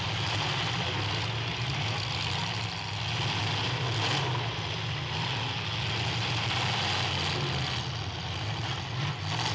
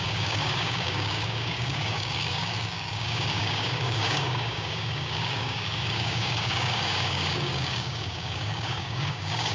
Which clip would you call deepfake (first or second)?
second